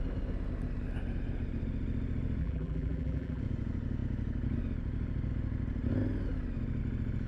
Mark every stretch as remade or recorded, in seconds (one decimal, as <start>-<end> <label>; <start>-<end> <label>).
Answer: 0.0-2.4 recorded; 2.4-3.4 remade; 3.4-7.3 recorded